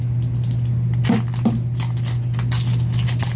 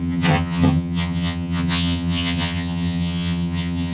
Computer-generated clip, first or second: second